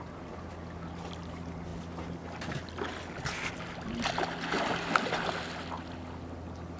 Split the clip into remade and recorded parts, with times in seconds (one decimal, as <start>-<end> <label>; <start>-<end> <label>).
0.0-6.8 recorded